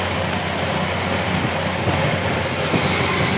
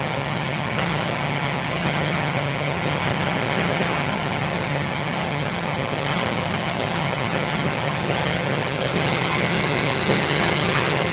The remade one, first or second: second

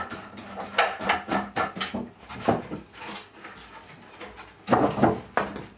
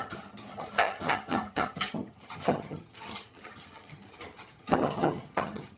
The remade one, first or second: second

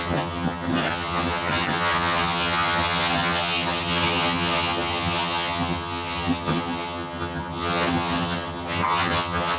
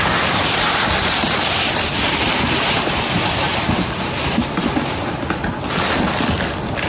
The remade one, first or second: first